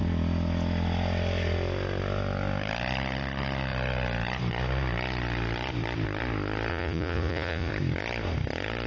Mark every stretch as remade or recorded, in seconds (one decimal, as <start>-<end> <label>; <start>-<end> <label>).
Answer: 0.0-6.7 recorded; 6.7-7.7 remade; 7.7-8.9 recorded